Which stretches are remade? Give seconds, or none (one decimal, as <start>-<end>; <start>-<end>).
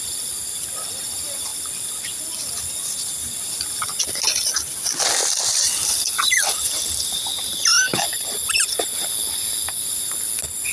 1.5-2.6; 7.7-9.1